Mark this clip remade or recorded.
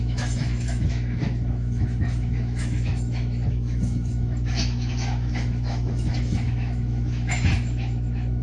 remade